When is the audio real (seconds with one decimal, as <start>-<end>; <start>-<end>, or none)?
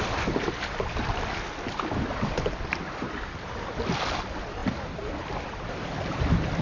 4.6-5.2